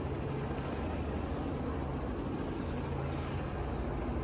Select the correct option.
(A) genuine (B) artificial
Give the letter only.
A